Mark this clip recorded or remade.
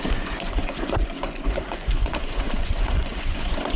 remade